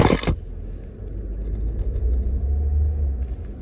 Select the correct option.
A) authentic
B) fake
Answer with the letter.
A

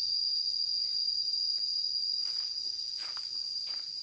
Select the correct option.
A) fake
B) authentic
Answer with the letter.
B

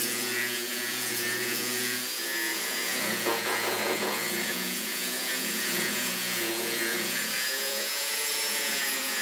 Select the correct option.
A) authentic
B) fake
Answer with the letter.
B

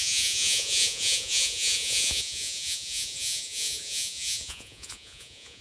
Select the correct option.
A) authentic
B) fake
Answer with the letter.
B